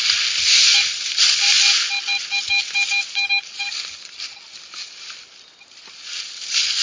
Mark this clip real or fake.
real